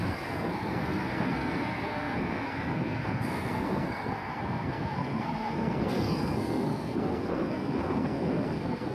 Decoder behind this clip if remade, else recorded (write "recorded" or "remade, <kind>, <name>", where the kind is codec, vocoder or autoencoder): remade, codec, SNAC